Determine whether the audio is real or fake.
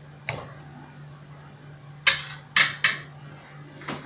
real